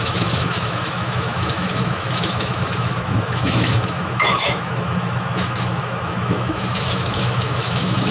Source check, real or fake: fake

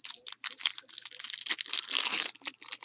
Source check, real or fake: real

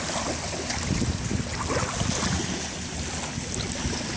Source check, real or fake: real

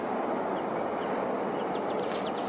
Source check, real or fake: real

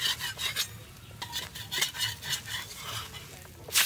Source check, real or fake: real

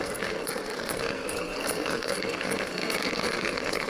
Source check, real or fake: fake